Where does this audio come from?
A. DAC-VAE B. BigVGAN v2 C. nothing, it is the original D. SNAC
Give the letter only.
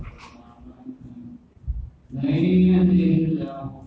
C